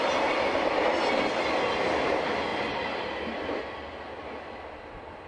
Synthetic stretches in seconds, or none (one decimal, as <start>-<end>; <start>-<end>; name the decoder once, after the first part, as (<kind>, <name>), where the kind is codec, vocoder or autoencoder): none